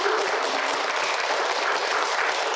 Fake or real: real